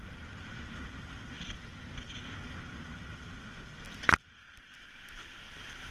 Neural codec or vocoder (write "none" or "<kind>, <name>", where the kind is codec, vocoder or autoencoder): none